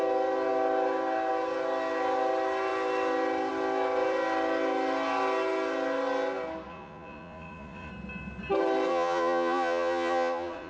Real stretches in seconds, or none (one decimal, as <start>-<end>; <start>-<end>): 0.0-6.7; 7.9-8.9